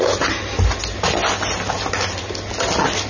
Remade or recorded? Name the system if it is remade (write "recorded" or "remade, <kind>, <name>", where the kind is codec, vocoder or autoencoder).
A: recorded